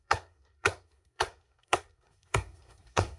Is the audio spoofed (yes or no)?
yes